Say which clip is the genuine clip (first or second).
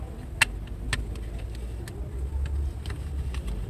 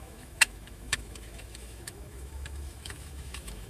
first